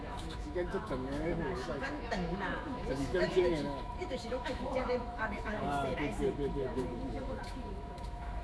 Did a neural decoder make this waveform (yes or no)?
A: yes